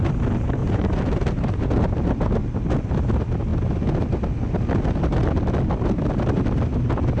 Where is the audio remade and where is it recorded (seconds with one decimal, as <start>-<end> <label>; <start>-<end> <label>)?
0.0-0.6 recorded; 0.6-1.9 remade; 1.9-7.2 recorded